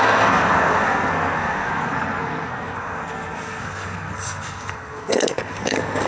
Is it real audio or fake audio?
fake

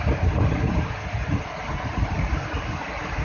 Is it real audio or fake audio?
real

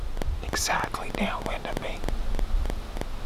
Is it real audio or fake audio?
real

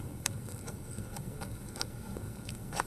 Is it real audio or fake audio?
fake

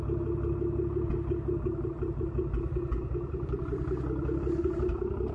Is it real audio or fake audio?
real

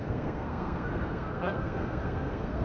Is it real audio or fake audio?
fake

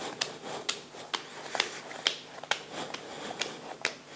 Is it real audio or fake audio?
real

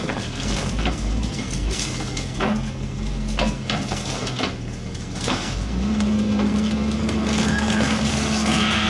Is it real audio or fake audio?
fake